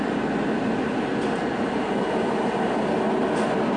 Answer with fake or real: real